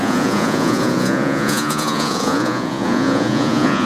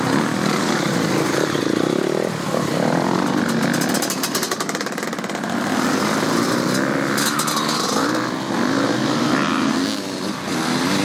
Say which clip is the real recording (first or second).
second